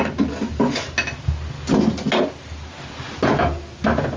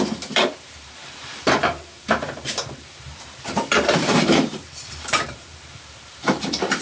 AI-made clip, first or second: second